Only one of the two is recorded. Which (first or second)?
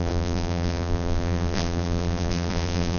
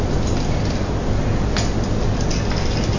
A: second